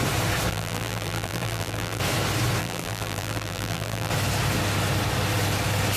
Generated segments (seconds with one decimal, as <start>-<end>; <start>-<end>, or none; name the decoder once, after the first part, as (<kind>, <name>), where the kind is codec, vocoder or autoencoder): 0.5-2.0 (vocoder, BigVGAN v2); 2.6-4.1